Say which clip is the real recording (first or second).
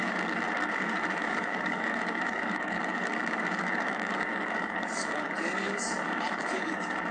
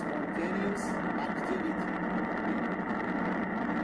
second